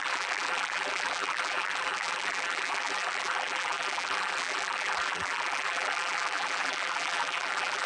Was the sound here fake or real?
fake